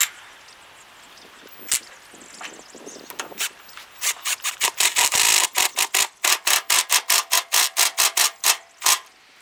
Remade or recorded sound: recorded